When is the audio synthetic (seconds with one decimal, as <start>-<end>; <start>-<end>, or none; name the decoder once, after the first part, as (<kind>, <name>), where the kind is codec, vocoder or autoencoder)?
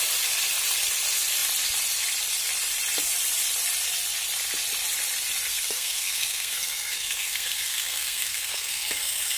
5.5-9.4 (codec, SNAC)